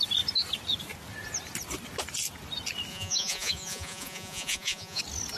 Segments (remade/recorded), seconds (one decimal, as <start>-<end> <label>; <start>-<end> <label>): 0.0-2.9 recorded; 2.9-5.0 remade; 5.0-5.4 recorded